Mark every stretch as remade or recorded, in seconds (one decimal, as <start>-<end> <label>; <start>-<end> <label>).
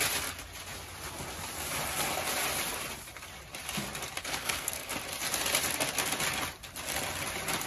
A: 0.0-4.2 recorded; 4.2-4.9 remade; 4.9-7.7 recorded